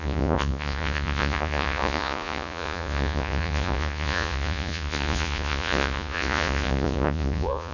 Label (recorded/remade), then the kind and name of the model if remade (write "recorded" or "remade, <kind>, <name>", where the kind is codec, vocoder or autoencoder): remade, vocoder, Vocos